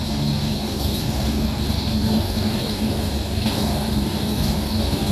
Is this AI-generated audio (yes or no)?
yes